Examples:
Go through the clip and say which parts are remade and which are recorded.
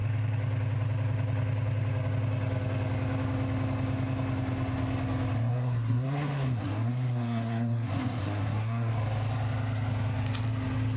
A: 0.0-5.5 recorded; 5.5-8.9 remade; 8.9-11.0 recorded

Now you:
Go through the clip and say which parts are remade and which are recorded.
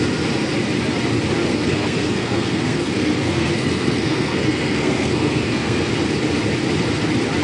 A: 0.0-1.5 recorded; 1.5-5.9 remade; 5.9-7.4 recorded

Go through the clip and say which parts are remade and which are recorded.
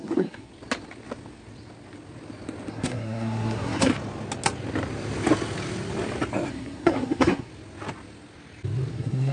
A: 0.0-0.5 remade; 0.5-2.7 recorded; 2.7-3.9 remade; 3.9-6.5 recorded; 6.5-7.5 remade; 7.5-8.9 recorded; 8.9-9.3 remade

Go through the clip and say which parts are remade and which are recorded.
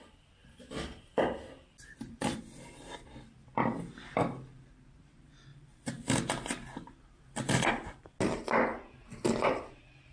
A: 0.0-10.1 recorded